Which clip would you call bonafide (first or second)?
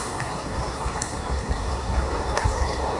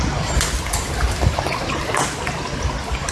second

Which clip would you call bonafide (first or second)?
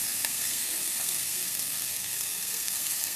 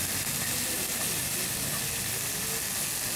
second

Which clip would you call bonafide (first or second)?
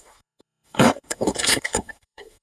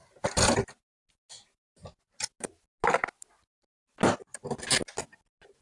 second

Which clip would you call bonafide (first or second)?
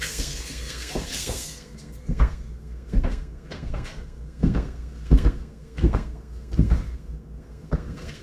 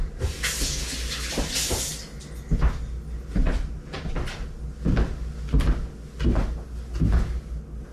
second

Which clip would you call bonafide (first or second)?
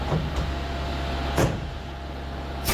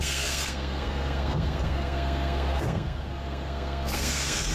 first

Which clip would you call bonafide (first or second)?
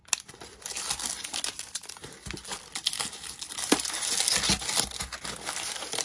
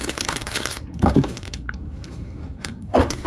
first